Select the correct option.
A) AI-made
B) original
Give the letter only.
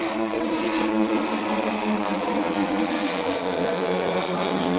A